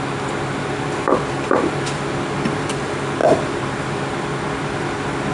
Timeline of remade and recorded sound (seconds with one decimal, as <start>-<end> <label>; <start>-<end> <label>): 0.0-5.3 recorded